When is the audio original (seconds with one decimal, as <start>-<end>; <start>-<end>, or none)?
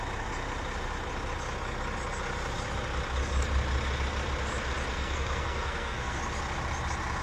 0.0-4.9; 6.2-7.2